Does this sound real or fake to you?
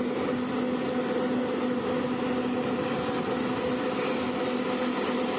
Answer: real